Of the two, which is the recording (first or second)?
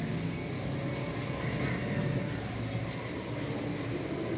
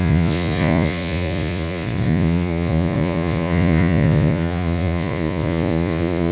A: first